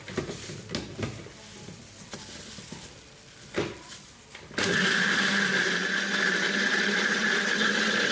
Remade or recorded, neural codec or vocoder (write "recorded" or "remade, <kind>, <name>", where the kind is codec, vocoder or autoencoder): recorded